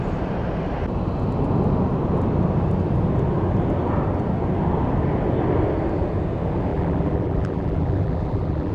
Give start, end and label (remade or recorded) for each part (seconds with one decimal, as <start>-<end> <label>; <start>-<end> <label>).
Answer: 0.0-6.7 recorded; 6.7-8.7 remade